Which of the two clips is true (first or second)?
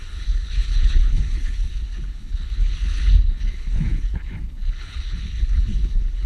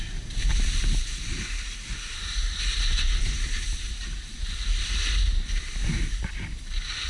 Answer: second